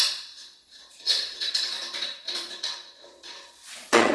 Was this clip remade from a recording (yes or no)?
yes